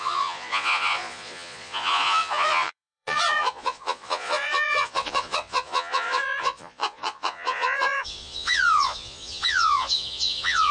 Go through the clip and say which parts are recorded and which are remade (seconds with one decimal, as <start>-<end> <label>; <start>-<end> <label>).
0.0-10.7 remade